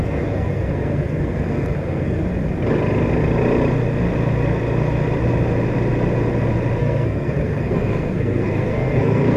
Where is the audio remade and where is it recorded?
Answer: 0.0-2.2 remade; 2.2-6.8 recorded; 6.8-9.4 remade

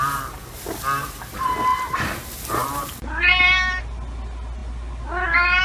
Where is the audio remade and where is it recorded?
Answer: 0.0-5.6 recorded

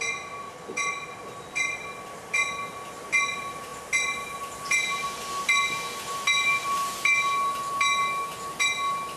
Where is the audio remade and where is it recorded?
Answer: 0.0-9.2 recorded

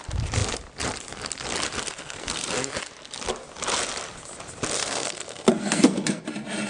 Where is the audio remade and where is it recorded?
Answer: 0.0-1.9 recorded; 1.9-2.5 remade; 2.5-4.8 recorded; 4.8-6.2 remade; 6.2-6.7 recorded

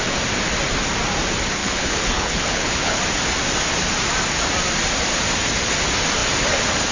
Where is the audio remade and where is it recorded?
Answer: 0.0-1.6 recorded; 1.6-3.0 remade; 3.0-6.9 recorded

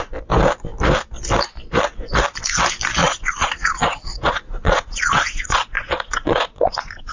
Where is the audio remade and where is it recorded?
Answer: 0.0-3.0 recorded; 3.0-7.1 remade